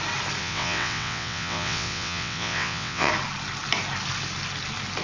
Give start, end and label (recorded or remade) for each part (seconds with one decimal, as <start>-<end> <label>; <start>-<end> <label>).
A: 0.0-0.4 recorded; 0.4-3.1 remade; 3.1-5.0 recorded